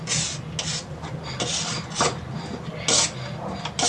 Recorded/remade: recorded